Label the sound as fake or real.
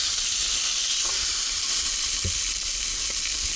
real